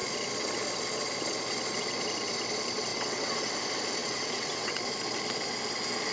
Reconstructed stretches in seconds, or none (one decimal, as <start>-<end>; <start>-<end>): 2.9-3.5; 4.0-4.8